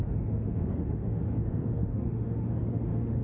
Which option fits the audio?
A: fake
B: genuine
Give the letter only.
A